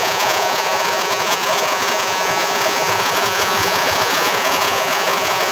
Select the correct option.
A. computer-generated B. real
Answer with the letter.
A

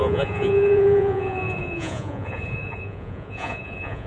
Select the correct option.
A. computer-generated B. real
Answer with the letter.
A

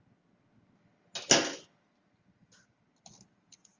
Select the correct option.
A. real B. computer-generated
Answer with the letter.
A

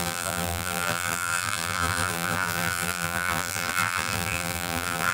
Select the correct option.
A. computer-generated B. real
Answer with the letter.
A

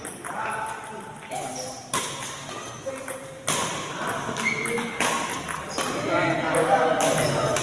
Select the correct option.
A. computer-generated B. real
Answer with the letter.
B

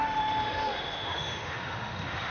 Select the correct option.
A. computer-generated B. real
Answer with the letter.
A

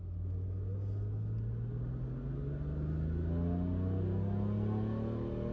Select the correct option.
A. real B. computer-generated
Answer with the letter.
A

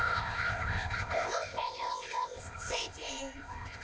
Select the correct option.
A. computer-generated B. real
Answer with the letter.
A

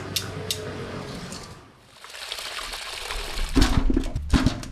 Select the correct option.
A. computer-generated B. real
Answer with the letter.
B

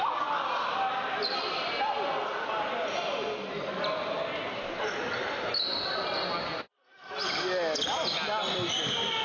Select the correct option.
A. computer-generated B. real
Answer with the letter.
B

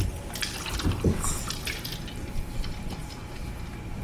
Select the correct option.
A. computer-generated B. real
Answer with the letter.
B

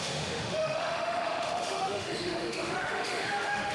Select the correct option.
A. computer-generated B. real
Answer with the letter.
A